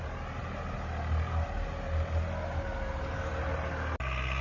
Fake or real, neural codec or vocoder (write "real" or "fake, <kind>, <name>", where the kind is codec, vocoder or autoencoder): real